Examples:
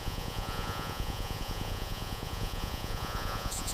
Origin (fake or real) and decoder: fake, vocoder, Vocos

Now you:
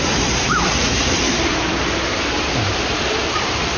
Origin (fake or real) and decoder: fake, vocoder, BigVGAN v2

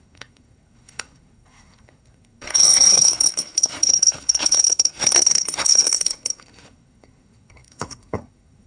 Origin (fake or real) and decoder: fake, codec, SNAC